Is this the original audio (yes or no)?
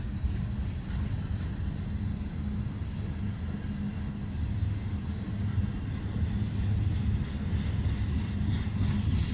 yes